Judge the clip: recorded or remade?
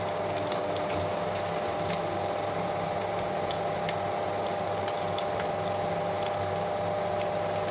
recorded